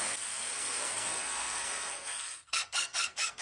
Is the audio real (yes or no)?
no